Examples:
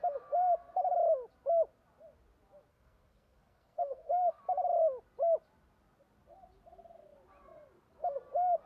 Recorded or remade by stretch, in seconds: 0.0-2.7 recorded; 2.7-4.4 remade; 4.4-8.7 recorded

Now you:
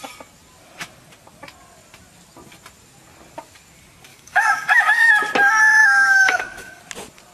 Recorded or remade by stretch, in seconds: 0.0-4.1 recorded; 4.1-5.1 remade; 5.1-5.8 recorded; 5.8-6.8 remade; 6.8-7.3 recorded